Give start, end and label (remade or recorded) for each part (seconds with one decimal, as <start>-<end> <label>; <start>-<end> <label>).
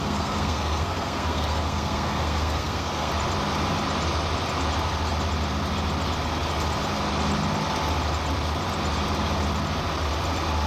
0.0-3.1 remade; 3.1-10.7 recorded